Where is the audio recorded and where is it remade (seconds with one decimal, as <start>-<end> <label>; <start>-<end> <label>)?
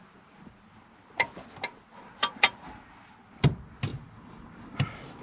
0.0-3.9 recorded; 3.9-5.2 remade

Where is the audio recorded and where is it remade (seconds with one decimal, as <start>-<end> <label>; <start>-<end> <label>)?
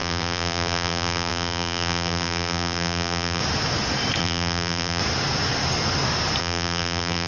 0.0-3.4 remade; 3.4-4.2 recorded; 4.2-5.0 remade; 5.0-6.4 recorded; 6.4-7.3 remade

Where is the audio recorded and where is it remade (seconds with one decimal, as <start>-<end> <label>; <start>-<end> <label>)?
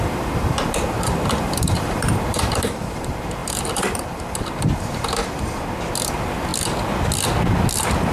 0.0-5.2 remade; 5.2-6.1 recorded; 6.1-6.5 remade; 6.5-8.1 recorded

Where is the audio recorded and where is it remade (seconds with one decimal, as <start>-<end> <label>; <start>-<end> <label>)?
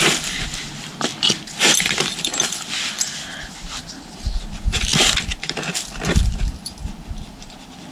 0.0-7.9 remade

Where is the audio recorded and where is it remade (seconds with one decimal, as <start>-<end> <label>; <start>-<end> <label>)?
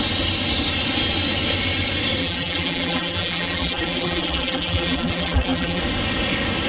0.0-2.2 recorded; 2.2-5.8 remade; 5.8-6.7 recorded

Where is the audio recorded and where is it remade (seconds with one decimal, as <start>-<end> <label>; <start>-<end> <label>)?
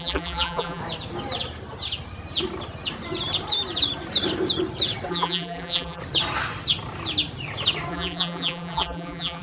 0.0-0.8 remade; 0.8-5.1 recorded; 5.1-6.0 remade; 6.0-7.9 recorded; 7.9-9.4 remade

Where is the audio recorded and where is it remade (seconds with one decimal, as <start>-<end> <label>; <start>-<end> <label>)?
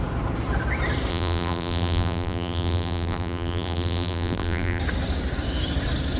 0.0-1.1 recorded; 1.1-4.8 remade; 4.8-6.2 recorded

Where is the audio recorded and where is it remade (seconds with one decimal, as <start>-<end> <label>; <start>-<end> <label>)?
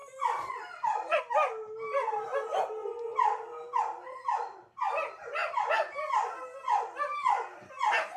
0.0-1.2 remade; 1.2-8.2 recorded